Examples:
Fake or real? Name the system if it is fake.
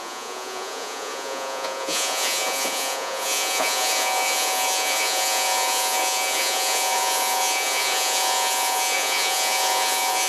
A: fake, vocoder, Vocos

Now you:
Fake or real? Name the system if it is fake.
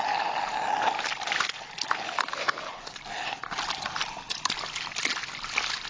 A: real